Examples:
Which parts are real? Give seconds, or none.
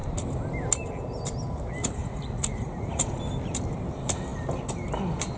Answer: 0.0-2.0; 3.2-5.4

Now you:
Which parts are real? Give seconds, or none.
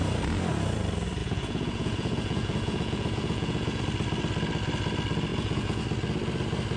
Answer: 0.0-1.2; 3.8-5.3; 5.8-6.8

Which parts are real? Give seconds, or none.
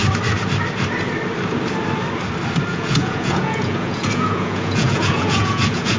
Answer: 0.0-2.7